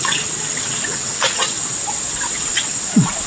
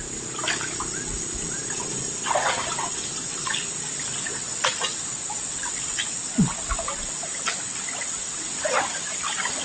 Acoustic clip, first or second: second